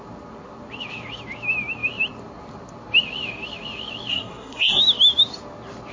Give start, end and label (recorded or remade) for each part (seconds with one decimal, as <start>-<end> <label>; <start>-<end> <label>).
0.0-4.1 recorded; 4.1-4.8 remade; 4.8-5.9 recorded